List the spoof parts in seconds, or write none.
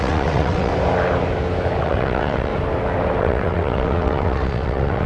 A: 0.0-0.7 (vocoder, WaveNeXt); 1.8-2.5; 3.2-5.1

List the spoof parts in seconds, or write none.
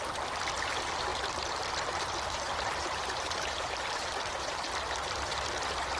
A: 1.1-4.7 (vocoder, BigVGAN v2)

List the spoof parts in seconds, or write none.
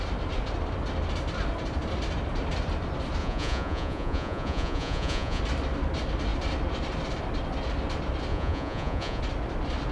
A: 3.2-5.4 (vocoder, Vocos); 8.3-9.2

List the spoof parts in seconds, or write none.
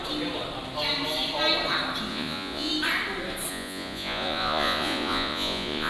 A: 2.1-2.7 (vocoder, Vocos); 3.5-5.9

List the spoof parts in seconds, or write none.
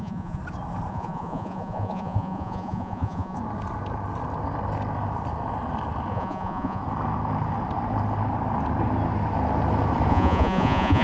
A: 0.0-0.4 (vocoder, Vocos); 0.9-3.4; 6.1-6.8; 10.1-11.0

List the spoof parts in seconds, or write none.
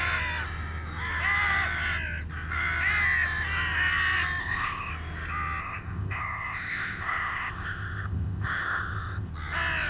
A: 4.4-4.9 (codec, ZipCodec); 5.6-9.3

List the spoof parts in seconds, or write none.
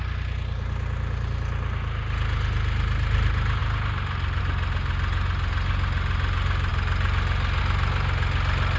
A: none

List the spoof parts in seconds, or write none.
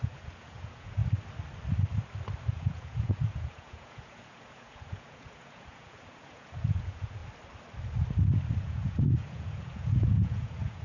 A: 0.0-1.0 (vocoder, Vocos); 2.5-7.2; 8.6-10.8